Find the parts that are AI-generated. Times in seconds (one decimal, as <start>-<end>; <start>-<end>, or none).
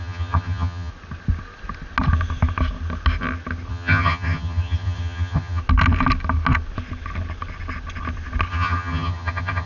0.0-0.9; 3.7-5.6; 8.5-9.7